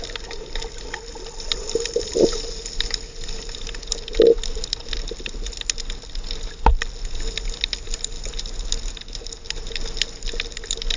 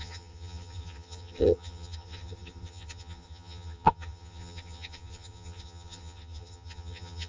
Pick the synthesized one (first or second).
second